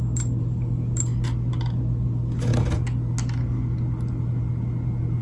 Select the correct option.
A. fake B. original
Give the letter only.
B